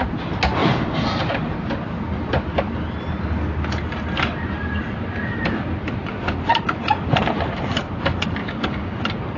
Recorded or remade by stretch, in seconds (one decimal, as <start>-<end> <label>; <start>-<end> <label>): 0.0-8.4 recorded; 8.4-9.0 remade; 9.0-9.4 recorded

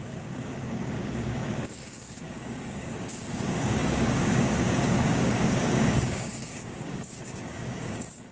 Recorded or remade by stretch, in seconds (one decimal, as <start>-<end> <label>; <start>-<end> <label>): 0.0-8.3 remade

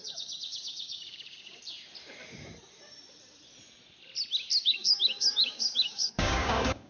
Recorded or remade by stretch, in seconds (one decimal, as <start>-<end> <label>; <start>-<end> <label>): 0.0-1.6 remade; 1.6-4.6 recorded; 4.6-6.9 remade

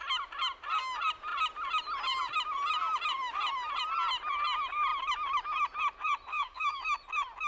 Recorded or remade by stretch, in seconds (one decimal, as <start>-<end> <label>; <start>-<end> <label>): 0.0-6.3 recorded; 6.3-6.8 remade; 6.8-7.5 recorded

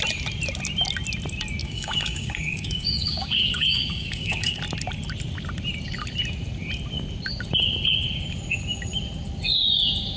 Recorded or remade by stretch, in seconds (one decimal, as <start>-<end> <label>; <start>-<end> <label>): 0.0-1.6 recorded; 1.6-4.6 remade; 4.6-10.2 recorded

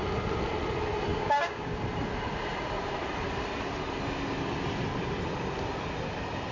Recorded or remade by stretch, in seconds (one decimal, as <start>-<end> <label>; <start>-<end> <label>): 0.0-1.1 recorded; 1.1-1.8 remade; 1.8-6.5 recorded